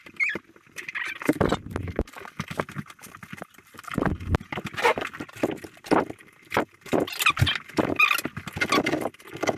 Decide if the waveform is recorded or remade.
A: recorded